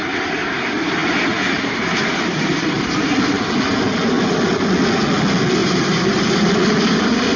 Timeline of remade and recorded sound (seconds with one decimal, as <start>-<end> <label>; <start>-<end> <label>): 0.0-0.4 recorded; 0.4-0.9 remade; 0.9-1.3 recorded; 1.3-3.4 remade; 3.4-5.6 recorded; 5.6-6.5 remade; 6.5-7.4 recorded